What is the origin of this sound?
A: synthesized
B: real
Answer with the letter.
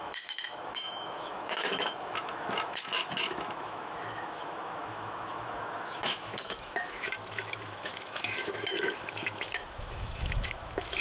A